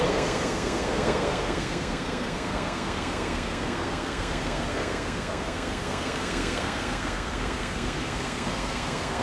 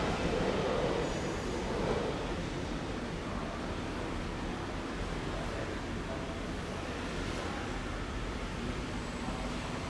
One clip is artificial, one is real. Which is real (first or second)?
second